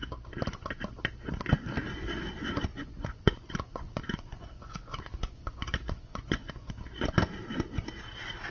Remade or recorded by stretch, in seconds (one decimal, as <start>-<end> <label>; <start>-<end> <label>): 0.0-2.7 recorded; 2.7-6.7 remade; 6.7-8.5 recorded